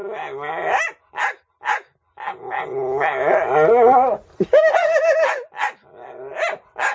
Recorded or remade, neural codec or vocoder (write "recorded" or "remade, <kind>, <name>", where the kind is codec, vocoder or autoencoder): recorded